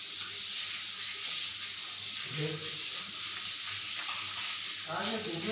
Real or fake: real